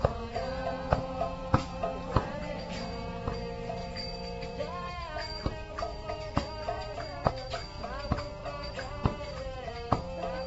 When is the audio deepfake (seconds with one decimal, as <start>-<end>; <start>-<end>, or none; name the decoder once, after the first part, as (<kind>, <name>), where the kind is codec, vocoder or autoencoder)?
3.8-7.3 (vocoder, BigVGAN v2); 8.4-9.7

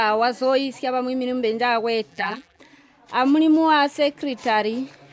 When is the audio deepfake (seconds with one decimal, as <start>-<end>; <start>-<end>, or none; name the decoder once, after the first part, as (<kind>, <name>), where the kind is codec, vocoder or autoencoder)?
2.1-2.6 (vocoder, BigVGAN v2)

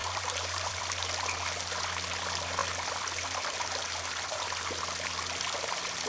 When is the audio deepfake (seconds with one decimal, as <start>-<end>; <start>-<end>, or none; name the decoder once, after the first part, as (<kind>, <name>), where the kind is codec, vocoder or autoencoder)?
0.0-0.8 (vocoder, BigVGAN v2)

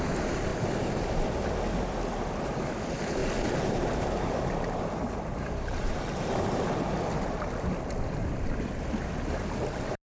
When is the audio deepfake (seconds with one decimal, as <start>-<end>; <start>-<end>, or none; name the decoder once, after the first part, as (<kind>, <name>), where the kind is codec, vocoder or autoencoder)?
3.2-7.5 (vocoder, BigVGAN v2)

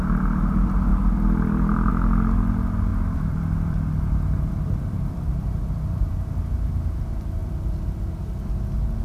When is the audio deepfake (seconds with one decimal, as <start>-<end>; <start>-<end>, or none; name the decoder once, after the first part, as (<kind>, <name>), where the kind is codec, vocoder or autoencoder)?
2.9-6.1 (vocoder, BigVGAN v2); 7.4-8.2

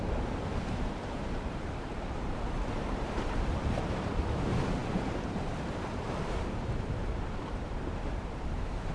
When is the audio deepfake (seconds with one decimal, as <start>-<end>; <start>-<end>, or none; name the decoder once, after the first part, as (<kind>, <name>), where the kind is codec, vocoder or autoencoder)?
0.0-8.9 (vocoder, BigVGAN v2)

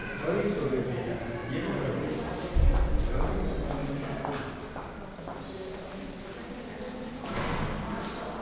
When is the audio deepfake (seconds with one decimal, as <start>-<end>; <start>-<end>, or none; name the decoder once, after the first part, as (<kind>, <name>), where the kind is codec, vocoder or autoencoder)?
none